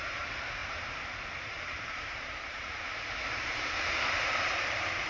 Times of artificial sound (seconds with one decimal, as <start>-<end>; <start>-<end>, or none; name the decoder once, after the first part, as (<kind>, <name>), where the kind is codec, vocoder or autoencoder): 0.0-0.6 (vocoder, BigVGAN v2); 1.5-5.1